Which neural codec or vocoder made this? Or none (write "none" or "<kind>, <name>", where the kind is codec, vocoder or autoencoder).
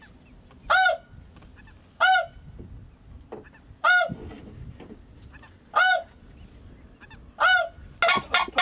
none